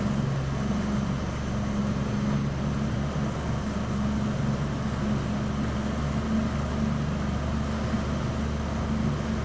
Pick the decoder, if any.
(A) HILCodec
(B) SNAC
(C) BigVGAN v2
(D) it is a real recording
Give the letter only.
D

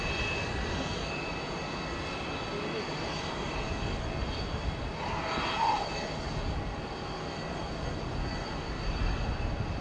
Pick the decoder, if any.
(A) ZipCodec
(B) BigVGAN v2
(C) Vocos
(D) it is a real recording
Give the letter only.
D